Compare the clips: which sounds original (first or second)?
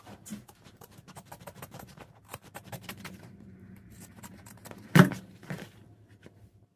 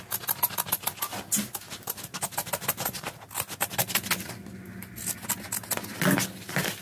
second